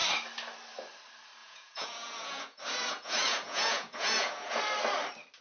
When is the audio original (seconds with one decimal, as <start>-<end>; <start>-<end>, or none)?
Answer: 0.0-1.4; 4.6-5.4